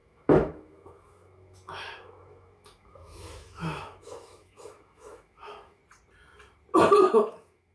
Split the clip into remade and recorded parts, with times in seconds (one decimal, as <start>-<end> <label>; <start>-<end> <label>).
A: 0.0-5.8 remade; 5.8-7.1 recorded; 7.1-7.7 remade